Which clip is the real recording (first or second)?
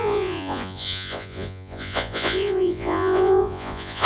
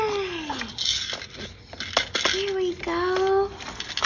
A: second